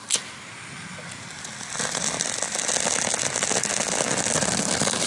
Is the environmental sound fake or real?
real